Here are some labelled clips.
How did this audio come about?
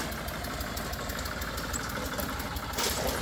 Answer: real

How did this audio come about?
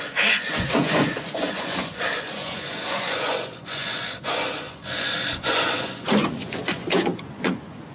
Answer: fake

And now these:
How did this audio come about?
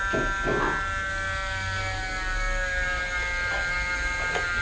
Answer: real